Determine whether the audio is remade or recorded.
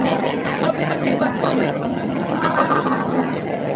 remade